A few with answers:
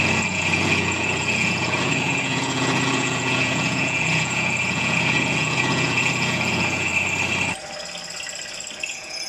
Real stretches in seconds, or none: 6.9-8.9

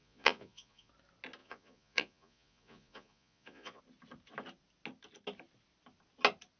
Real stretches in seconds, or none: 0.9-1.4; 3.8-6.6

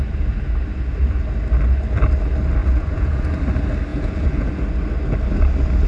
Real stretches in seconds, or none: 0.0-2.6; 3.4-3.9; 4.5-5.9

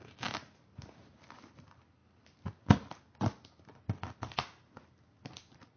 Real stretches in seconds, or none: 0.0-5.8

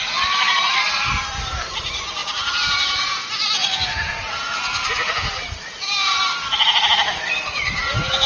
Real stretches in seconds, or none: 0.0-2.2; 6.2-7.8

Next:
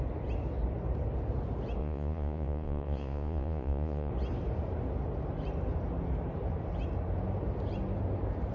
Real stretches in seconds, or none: 0.0-1.8; 4.1-8.5